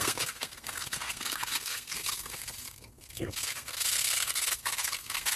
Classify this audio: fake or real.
fake